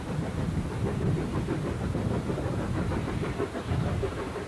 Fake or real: fake